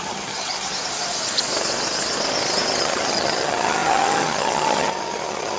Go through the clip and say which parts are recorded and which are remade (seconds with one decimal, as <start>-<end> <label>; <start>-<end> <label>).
0.0-0.7 remade; 0.7-2.8 recorded; 2.8-5.6 remade